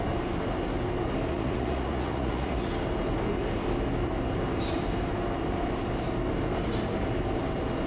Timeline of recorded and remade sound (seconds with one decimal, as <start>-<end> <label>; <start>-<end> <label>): 0.0-1.3 recorded; 1.3-2.7 remade; 2.7-7.9 recorded